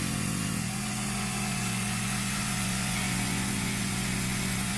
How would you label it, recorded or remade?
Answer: remade